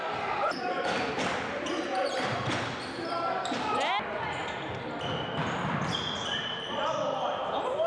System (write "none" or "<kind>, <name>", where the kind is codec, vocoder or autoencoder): none